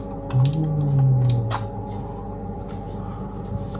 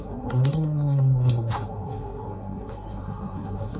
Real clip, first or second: first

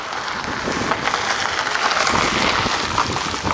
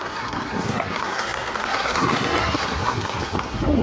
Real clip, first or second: first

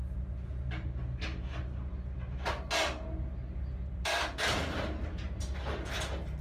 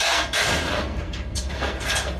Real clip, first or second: first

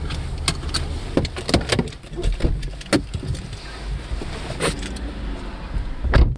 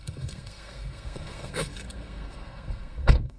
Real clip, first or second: first